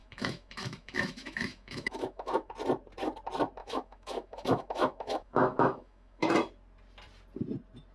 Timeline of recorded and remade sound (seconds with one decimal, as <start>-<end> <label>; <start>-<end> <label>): 0.0-2.5 remade; 2.5-3.6 recorded; 3.6-6.3 remade; 6.3-7.9 recorded